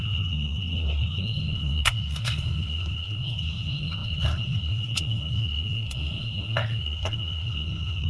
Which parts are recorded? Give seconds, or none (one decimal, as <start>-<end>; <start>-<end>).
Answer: none